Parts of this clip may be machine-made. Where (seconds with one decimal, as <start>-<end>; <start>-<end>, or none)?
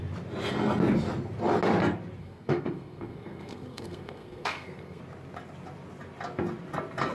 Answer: 2.2-5.0